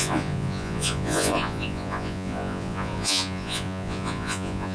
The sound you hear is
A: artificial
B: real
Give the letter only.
A